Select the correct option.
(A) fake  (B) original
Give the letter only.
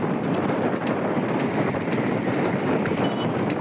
A